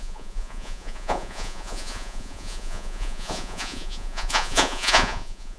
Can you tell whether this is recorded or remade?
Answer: remade